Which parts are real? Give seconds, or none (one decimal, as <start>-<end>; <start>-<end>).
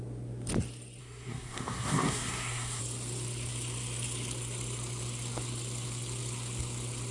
0.0-1.0; 2.8-7.1